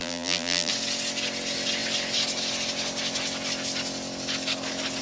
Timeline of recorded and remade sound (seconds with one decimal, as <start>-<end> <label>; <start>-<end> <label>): 0.0-0.7 remade; 0.7-5.0 recorded